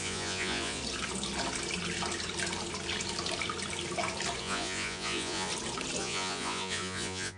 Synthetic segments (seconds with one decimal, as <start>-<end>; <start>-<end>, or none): 0.0-0.8; 4.4-5.5; 6.0-7.4